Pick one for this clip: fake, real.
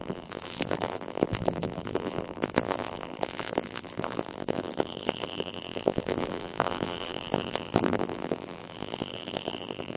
fake